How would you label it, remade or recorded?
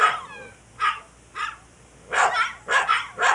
recorded